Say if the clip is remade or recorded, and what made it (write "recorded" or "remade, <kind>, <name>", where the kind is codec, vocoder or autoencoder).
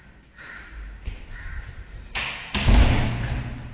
remade, vocoder, BigVGAN v2